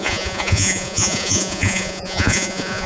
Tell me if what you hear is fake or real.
fake